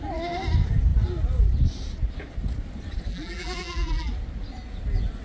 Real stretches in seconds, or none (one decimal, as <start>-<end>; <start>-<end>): 0.0-3.1; 4.1-5.2